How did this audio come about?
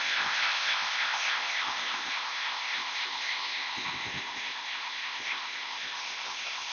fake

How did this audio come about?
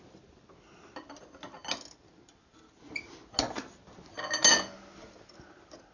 real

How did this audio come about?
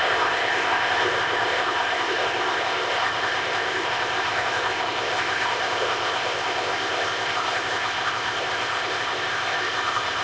fake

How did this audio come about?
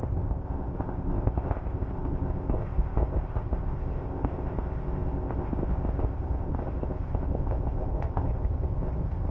fake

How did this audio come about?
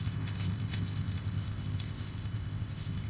fake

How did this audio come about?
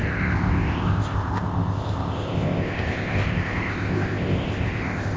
fake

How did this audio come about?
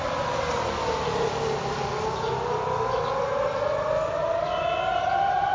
real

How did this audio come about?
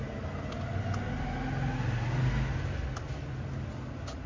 real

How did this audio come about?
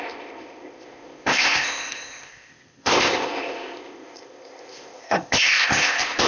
fake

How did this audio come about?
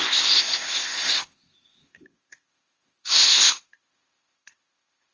fake